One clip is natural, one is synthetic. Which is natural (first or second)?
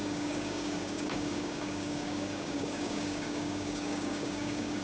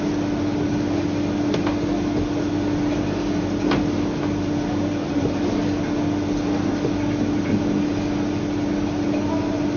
second